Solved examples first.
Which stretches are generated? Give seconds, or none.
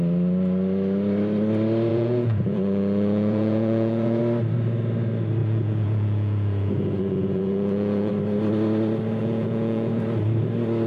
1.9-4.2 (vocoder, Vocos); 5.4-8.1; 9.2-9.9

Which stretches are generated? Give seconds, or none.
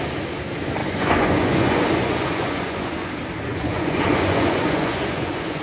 0.8-3.1 (vocoder, Vocos); 3.5-5.6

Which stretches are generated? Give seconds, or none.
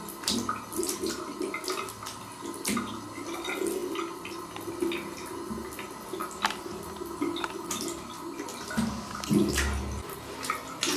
none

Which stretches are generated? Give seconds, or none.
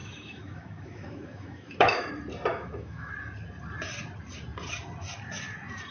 0.0-2.1 (autoencoder, DAC-VAE); 2.5-3.1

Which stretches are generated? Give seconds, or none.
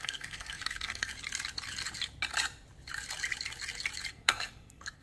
0.0-1.1 (codec, SNAC); 4.1-5.0